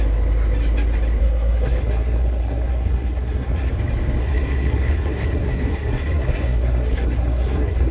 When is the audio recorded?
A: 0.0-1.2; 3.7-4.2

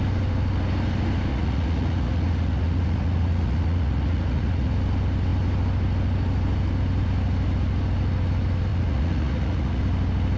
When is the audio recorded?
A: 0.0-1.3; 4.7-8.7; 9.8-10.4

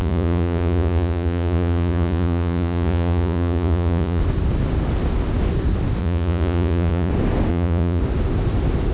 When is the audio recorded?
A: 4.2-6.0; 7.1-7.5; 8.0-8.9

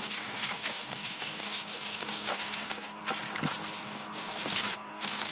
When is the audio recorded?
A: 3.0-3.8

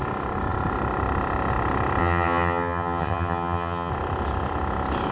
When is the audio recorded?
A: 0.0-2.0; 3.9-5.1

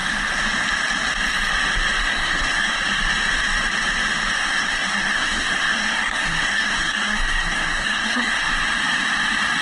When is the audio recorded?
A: 0.0-2.0; 2.8-4.4; 8.5-9.6

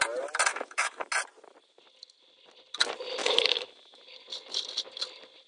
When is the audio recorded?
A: 0.0-0.5; 1.1-3.2; 4.0-5.5